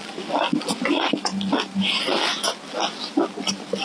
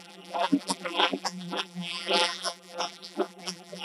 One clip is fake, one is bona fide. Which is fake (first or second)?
second